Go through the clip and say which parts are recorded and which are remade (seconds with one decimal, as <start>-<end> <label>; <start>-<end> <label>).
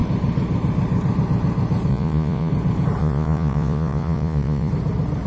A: 0.0-1.9 recorded; 1.9-2.5 remade; 2.5-3.0 recorded; 3.0-4.7 remade; 4.7-5.3 recorded